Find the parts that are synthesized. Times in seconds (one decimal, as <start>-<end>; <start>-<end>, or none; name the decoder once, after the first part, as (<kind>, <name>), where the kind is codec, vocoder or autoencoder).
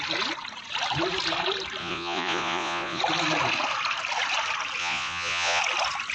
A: 1.8-3.0 (vocoder, Vocos); 4.8-5.6